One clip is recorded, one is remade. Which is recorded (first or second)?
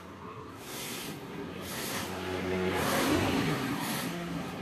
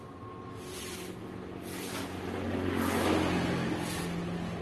second